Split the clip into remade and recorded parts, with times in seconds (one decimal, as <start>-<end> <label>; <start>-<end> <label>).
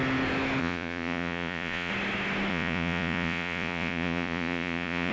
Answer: 0.0-0.6 recorded; 0.6-1.9 remade; 1.9-2.5 recorded; 2.5-5.1 remade